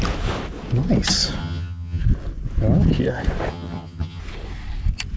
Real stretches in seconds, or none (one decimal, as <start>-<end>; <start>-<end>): 0.0-1.4; 2.0-3.5; 4.2-5.2